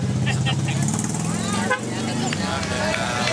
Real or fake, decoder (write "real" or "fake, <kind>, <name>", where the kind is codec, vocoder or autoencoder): real